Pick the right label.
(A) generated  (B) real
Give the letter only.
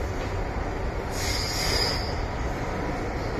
B